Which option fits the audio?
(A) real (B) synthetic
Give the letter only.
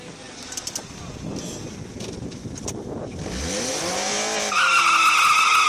A